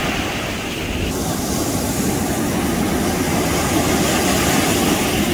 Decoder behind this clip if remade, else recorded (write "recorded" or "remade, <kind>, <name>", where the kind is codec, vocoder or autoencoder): recorded